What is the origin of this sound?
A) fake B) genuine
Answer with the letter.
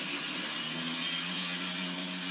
B